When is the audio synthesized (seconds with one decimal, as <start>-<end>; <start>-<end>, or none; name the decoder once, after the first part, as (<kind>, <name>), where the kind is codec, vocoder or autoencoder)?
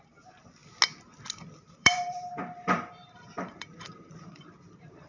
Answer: 1.8-5.1 (vocoder, BigVGAN v2)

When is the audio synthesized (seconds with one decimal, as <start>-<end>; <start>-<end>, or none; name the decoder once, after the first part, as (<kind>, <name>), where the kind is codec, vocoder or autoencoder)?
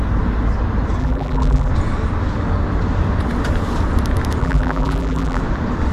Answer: 1.0-1.7 (vocoder, BigVGAN v2); 4.4-5.4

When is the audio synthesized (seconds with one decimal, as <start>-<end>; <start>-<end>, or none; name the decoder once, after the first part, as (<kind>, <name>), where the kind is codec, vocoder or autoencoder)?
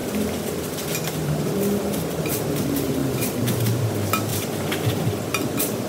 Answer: 1.2-2.0 (vocoder, BigVGAN v2); 3.0-3.8; 4.3-5.0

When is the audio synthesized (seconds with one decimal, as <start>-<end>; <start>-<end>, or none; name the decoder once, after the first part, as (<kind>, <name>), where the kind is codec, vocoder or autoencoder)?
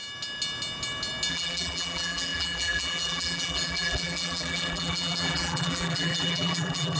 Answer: 1.3-7.0 (vocoder, BigVGAN v2)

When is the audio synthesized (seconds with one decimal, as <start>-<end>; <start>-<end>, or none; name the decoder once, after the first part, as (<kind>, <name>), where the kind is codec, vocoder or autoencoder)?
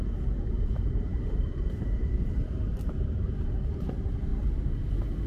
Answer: 0.0-4.3 (vocoder, BigVGAN v2)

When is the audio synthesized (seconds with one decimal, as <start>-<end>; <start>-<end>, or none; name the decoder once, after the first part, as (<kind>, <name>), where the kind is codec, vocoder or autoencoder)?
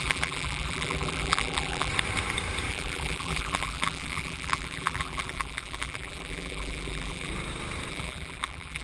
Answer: 0.0-1.9 (vocoder, BigVGAN v2); 2.7-7.3; 7.9-8.8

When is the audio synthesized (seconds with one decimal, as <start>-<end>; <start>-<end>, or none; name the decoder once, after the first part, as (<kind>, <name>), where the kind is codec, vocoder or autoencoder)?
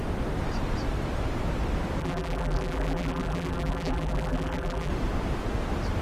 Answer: 2.0-4.9 (vocoder, BigVGAN v2)